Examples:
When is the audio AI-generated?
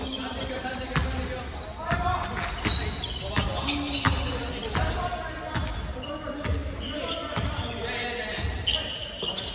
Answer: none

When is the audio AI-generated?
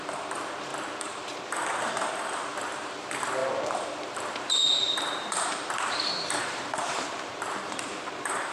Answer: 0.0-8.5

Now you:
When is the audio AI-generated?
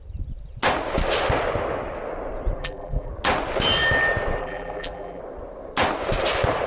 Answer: 2.6-3.1; 4.4-5.2